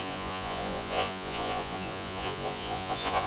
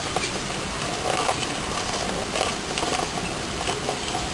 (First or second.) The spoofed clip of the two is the first